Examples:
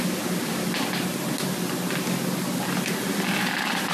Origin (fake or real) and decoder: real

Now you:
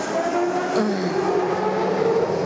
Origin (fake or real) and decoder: real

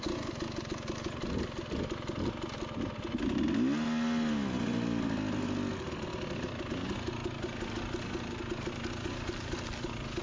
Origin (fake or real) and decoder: real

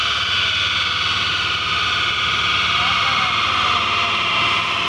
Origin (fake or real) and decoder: real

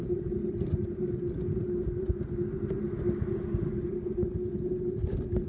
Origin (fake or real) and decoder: real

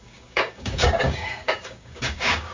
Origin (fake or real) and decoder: fake, codec, DAC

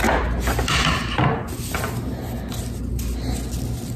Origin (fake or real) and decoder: real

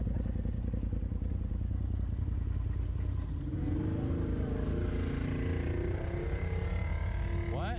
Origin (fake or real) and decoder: real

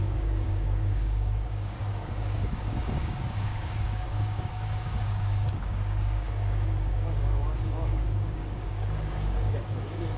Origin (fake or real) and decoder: fake, codec, DAC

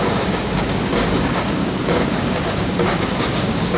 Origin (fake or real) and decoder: fake, codec, DAC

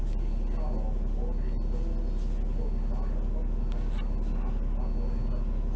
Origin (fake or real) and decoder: real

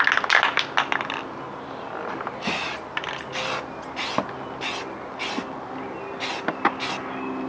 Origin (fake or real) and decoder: real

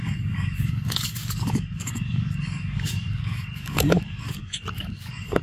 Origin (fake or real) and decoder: fake, codec, DAC